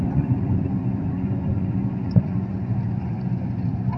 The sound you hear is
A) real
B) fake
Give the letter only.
B